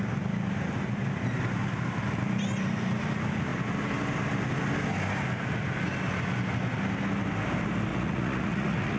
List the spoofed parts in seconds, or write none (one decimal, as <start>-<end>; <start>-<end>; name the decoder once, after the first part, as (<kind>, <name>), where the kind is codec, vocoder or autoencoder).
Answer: 7.9-9.0 (vocoder, Vocos)